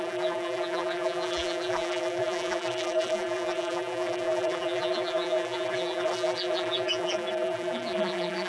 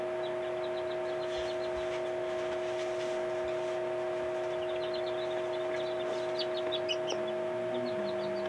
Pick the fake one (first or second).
first